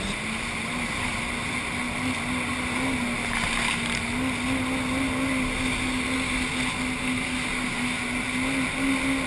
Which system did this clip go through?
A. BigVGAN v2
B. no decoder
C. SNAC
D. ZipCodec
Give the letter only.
B